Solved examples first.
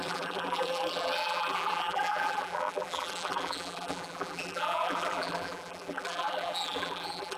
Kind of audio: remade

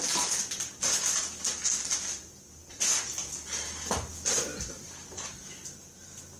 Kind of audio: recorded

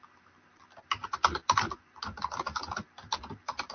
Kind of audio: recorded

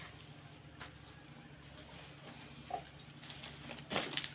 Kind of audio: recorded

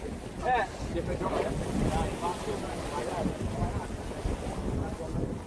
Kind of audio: recorded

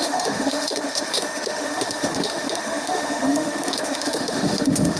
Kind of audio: remade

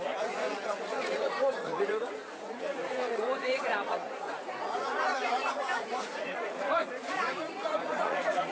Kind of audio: remade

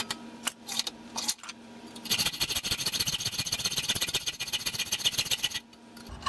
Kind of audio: recorded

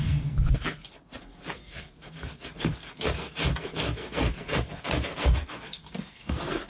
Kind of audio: remade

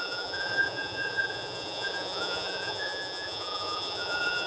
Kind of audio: remade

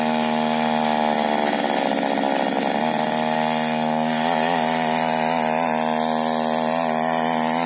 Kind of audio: recorded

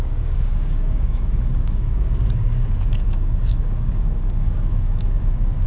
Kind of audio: remade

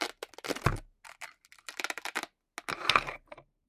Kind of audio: recorded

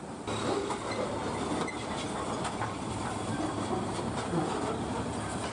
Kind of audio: recorded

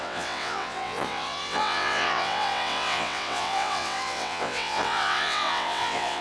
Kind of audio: remade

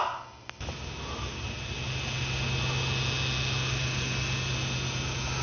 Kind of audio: recorded